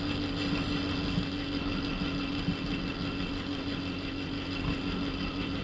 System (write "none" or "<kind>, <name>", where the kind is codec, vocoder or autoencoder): none